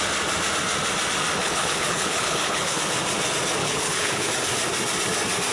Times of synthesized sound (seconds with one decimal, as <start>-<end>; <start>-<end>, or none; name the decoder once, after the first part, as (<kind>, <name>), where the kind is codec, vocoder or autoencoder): 1.4-2.8 (codec, HILCodec); 3.6-4.3